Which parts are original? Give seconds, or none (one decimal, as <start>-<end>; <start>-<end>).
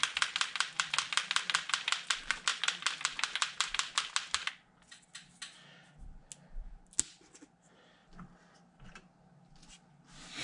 0.0-10.4